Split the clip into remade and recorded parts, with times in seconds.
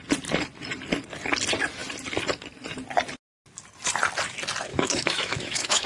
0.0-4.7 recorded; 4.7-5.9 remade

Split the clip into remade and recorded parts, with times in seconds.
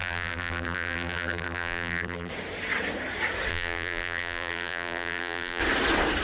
0.0-2.3 remade; 2.3-3.5 recorded; 3.5-5.6 remade; 5.6-6.2 recorded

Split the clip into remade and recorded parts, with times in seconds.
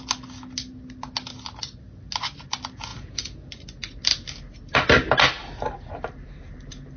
0.0-2.9 recorded; 2.9-3.5 remade; 3.5-7.0 recorded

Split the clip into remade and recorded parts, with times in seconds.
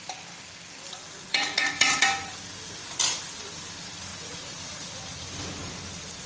0.0-1.0 recorded; 1.0-2.0 remade; 2.0-4.1 recorded; 4.1-5.0 remade; 5.0-6.3 recorded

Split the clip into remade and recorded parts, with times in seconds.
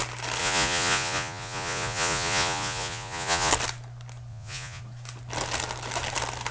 0.0-0.4 recorded; 0.4-3.5 remade; 3.5-4.3 recorded; 4.3-4.8 remade; 4.8-6.5 recorded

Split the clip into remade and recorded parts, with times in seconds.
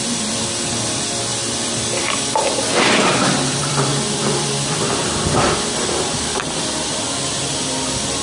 0.0-1.3 recorded; 1.3-2.1 remade; 2.1-3.1 recorded; 3.1-7.4 remade; 7.4-8.2 recorded